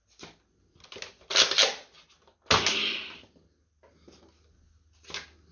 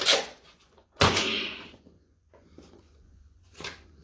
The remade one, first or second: second